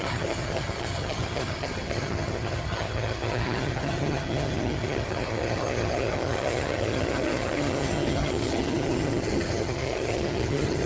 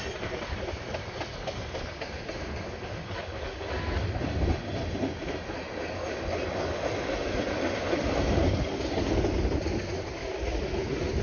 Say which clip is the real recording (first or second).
second